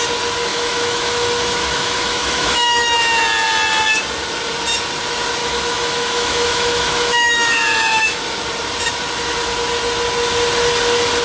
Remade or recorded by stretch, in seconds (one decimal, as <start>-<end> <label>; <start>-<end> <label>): 0.0-0.5 recorded; 0.5-3.0 remade; 3.0-5.4 recorded; 5.4-8.2 remade; 8.2-11.2 recorded